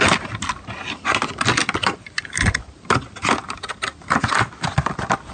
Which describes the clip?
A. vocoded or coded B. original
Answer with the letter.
B